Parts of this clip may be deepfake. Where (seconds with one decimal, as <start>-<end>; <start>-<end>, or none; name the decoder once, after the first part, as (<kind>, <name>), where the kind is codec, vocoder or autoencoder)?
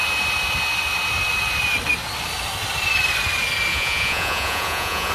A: 3.7-5.1 (vocoder, Vocos)